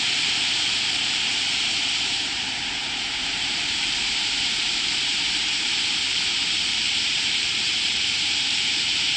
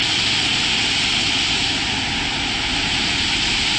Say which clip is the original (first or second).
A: second